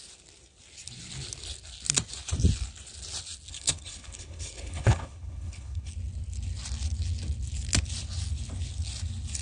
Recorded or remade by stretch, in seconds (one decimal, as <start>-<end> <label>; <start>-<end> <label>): 0.0-3.5 recorded; 3.5-5.9 remade; 5.9-9.4 recorded